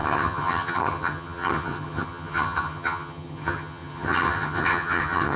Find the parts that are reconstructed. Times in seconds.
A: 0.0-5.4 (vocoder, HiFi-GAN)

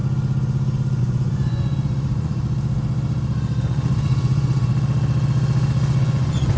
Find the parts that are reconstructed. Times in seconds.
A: 1.0-2.4 (vocoder, Vocos); 3.6-4.7; 6.0-6.6